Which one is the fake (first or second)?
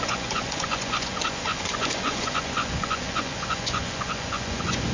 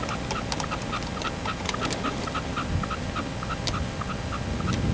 first